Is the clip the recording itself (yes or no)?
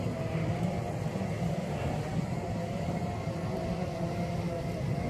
yes